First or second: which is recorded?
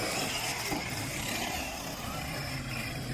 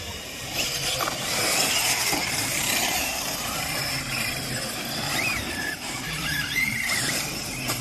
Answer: first